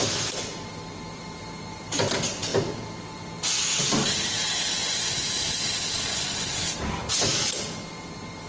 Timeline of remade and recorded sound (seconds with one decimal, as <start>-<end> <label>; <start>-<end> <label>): 0.0-4.8 recorded; 4.8-5.3 remade; 5.3-6.1 recorded; 6.1-6.6 remade; 6.6-8.5 recorded